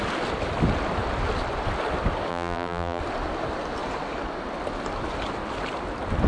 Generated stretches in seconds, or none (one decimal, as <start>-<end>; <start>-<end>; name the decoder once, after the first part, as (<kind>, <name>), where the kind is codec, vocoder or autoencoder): 2.3-3.0 (vocoder, BigVGAN v2)